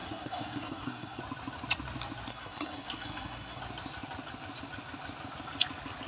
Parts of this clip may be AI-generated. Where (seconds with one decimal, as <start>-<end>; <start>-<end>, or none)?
0.0-1.2; 2.3-3.6